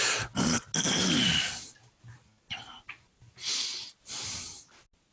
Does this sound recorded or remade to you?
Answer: recorded